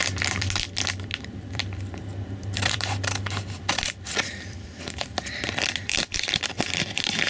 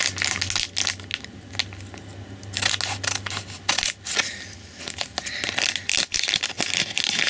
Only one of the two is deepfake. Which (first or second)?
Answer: first